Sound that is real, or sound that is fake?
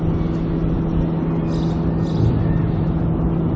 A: real